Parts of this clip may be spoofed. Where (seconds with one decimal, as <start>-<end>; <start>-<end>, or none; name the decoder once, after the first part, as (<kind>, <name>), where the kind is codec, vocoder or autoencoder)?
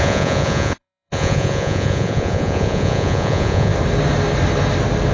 0.0-3.7 (vocoder, Vocos)